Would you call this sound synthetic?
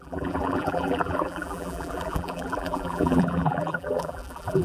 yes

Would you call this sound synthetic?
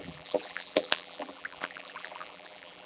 yes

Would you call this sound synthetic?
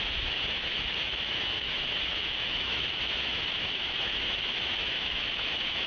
yes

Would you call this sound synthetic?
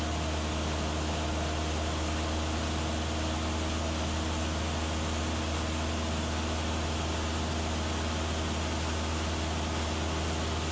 no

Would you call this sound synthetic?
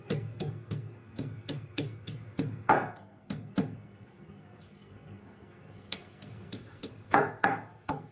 yes